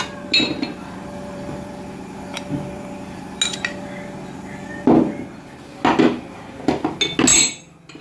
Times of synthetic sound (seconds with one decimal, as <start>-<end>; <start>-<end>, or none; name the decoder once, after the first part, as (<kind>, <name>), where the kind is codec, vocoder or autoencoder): 0.5-3.4 (vocoder, BigVGAN v2); 7.3-8.0